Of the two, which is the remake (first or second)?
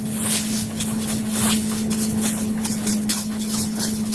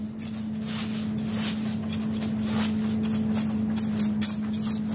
first